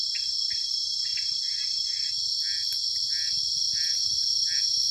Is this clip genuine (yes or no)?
yes